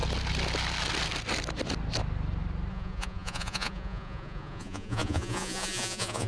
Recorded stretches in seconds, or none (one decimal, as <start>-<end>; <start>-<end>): 0.0-2.7

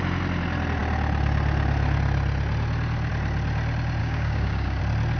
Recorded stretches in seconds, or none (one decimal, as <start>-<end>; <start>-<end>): 0.0-4.0; 4.8-5.2

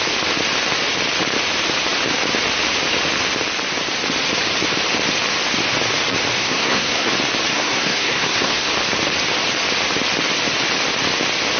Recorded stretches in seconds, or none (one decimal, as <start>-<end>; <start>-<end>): 0.0-6.4; 7.1-7.5; 8.7-11.6

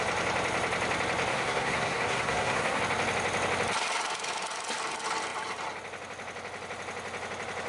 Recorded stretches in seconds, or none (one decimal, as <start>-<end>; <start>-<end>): 0.0-1.3; 2.8-7.7

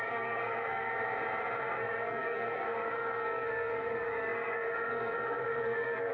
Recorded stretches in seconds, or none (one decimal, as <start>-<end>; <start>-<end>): 0.9-1.6

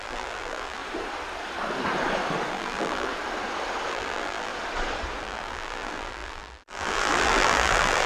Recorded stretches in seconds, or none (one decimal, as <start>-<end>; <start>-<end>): 0.8-2.5; 3.1-3.9; 4.5-5.2

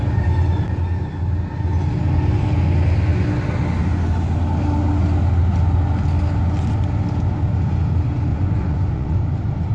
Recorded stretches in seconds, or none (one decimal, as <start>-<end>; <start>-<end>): 0.0-8.3; 9.2-9.7

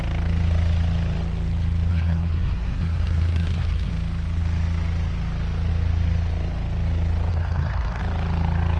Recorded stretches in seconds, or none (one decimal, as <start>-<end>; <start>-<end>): 0.0-1.9; 3.9-7.3; 8.0-8.8